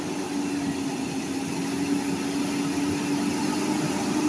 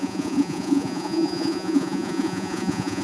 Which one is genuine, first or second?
first